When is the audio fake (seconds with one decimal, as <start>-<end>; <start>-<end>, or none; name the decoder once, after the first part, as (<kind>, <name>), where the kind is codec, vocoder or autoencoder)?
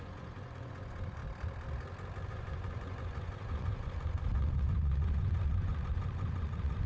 0.0-1.2 (vocoder, Vocos); 2.3-6.9